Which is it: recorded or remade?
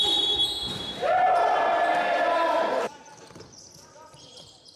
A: recorded